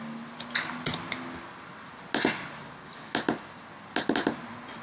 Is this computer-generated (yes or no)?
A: no